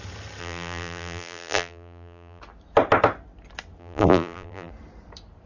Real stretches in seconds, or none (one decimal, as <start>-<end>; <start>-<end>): 0.0-0.4; 2.4-3.8; 4.7-5.5